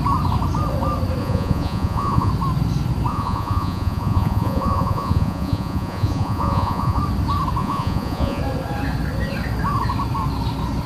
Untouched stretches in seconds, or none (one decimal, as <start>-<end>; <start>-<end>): 0.0-1.2; 2.3-3.1; 7.0-7.6; 8.4-10.9